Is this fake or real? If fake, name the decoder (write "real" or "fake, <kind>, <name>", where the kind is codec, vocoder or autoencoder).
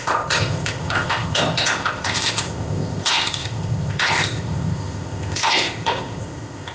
fake, codec, ZipCodec